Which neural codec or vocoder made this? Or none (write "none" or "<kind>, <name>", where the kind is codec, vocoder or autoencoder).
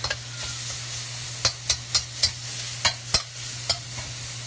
none